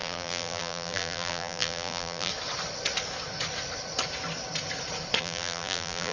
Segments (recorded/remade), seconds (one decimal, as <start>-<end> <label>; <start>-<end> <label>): 0.0-2.3 remade; 2.3-5.2 recorded; 5.2-6.1 remade

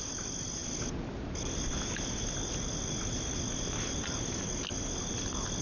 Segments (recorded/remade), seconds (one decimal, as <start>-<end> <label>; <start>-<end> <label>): 0.0-5.6 recorded

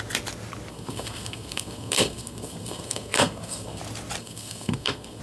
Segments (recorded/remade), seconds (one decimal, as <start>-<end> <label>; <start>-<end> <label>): 0.0-0.7 recorded; 0.7-3.8 remade; 3.8-4.2 recorded; 4.2-5.2 remade

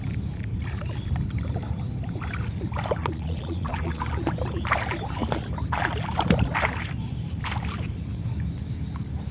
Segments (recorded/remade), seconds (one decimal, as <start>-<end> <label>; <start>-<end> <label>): 0.0-3.0 recorded; 3.0-4.0 remade; 4.0-9.3 recorded

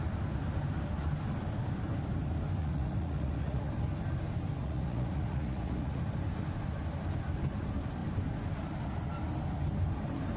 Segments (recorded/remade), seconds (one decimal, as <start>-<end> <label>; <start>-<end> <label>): 0.0-2.6 recorded; 2.6-3.7 remade; 3.7-4.6 recorded; 4.6-6.0 remade; 6.0-10.4 recorded

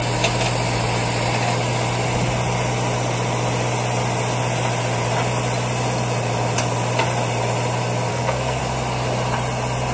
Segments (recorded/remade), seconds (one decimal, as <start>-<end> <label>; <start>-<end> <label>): 0.0-8.1 recorded; 8.1-8.6 remade; 8.6-9.9 recorded

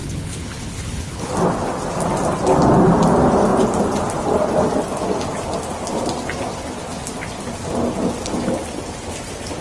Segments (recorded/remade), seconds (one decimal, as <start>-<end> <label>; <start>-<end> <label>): 0.0-1.3 remade; 1.3-9.6 recorded